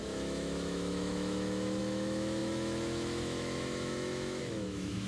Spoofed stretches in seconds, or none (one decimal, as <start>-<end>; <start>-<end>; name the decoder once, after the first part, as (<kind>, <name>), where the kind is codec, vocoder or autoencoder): 0.0-5.1 (autoencoder, DAC-VAE)